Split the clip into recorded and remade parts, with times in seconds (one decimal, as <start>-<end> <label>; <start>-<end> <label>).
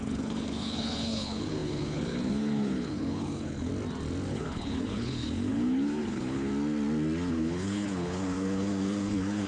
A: 0.0-3.7 remade; 3.7-4.3 recorded; 4.3-6.5 remade; 6.5-7.3 recorded; 7.3-9.5 remade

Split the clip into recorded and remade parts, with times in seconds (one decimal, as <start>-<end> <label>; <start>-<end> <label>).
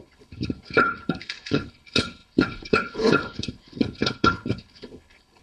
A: 0.0-5.4 remade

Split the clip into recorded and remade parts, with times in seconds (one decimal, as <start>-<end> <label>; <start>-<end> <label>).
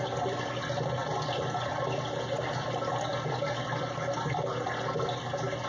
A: 0.0-5.7 recorded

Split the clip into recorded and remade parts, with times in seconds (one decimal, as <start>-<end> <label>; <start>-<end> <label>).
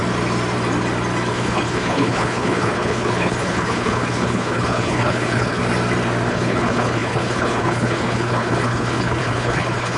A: 0.0-1.3 recorded; 1.3-5.6 remade; 5.6-6.3 recorded; 6.3-10.0 remade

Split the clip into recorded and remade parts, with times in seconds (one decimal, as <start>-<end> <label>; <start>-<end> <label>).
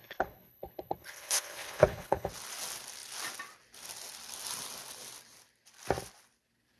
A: 0.0-2.3 remade; 2.3-6.8 recorded